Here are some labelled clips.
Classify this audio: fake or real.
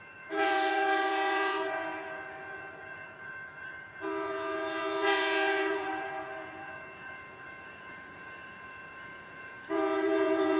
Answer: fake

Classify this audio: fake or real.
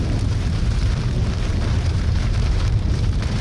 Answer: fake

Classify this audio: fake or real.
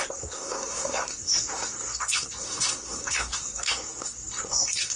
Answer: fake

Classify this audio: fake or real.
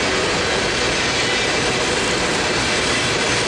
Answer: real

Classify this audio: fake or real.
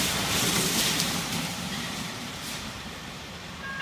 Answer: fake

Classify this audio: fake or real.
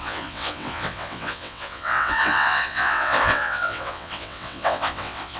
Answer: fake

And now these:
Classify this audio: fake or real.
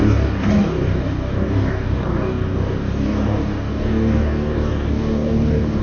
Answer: fake